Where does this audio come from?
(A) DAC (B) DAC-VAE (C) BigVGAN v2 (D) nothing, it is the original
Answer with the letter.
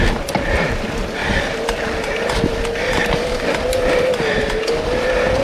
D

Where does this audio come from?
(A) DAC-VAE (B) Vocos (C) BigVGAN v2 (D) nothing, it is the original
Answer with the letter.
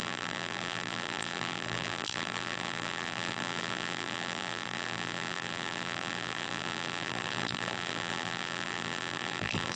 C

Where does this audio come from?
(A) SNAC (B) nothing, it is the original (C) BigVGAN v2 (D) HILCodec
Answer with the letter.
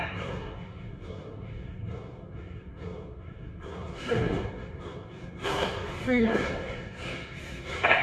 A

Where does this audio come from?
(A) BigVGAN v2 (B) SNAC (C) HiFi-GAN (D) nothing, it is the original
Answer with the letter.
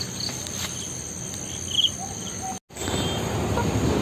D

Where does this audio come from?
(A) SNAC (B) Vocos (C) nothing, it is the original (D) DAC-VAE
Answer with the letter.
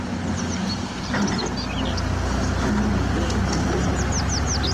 C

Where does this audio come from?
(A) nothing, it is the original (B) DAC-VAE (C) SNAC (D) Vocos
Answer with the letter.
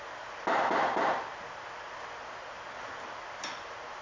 A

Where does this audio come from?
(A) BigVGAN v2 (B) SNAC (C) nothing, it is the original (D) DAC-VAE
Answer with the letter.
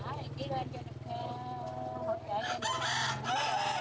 C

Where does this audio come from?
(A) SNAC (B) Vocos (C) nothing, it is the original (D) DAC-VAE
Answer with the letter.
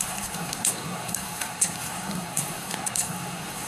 A